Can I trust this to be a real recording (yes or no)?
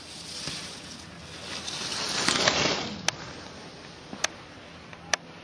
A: yes